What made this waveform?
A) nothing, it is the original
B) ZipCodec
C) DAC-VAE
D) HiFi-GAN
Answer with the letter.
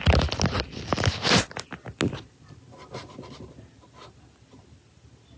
A